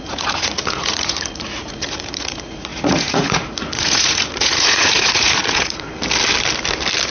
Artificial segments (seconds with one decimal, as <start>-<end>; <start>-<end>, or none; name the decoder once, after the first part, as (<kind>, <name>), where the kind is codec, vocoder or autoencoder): 0.0-5.9 (vocoder, Vocos)